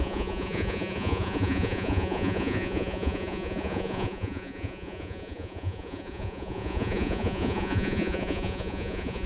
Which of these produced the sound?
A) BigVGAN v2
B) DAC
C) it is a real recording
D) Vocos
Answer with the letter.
D